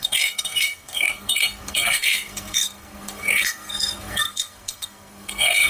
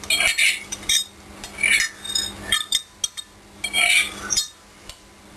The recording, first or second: second